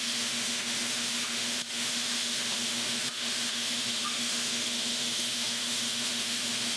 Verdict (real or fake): fake